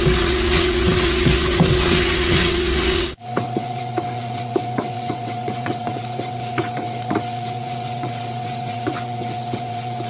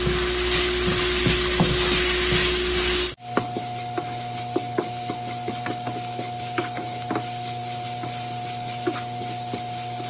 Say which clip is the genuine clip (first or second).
second